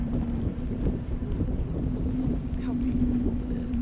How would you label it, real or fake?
real